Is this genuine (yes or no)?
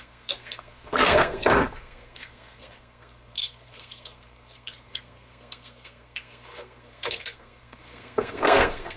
no